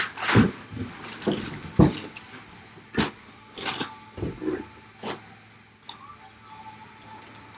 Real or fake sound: real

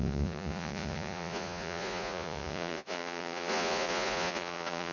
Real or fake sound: fake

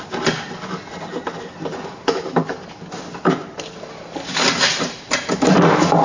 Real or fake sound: real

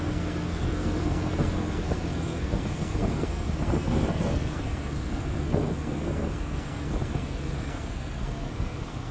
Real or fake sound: fake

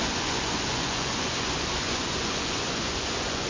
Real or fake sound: fake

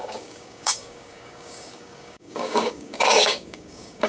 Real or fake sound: fake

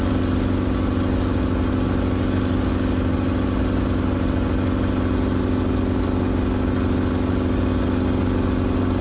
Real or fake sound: real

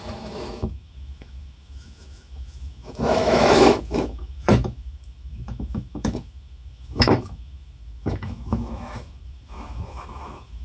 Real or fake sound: fake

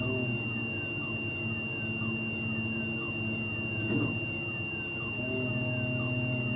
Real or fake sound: real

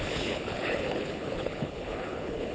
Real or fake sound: fake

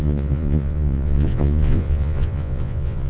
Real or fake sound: fake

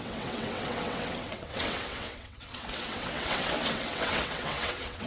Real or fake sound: fake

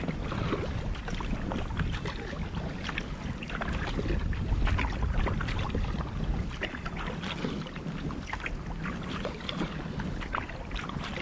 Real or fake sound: real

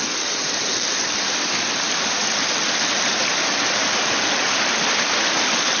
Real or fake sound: real